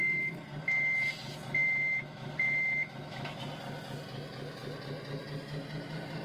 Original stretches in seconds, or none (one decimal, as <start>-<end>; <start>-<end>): 0.0-1.6; 3.4-6.2